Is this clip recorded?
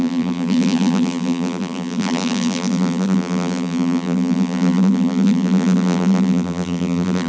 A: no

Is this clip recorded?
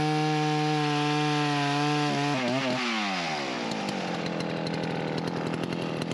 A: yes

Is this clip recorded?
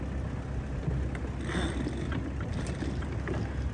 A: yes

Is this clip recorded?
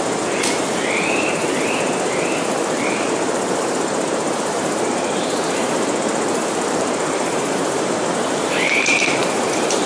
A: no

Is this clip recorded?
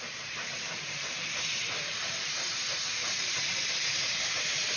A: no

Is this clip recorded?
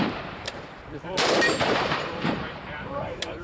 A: no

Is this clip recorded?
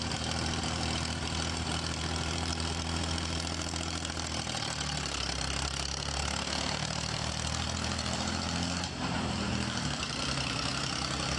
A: no